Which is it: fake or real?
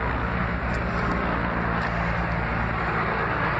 real